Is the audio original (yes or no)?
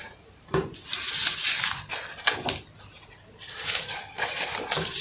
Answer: yes